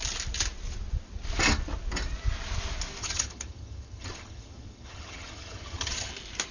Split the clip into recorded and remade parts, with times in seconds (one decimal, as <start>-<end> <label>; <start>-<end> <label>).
0.0-3.0 recorded; 3.0-6.1 remade; 6.1-6.5 recorded